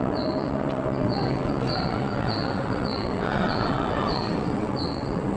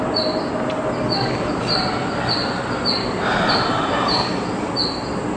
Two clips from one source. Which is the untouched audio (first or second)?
second